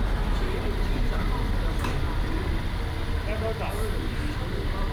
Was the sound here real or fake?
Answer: real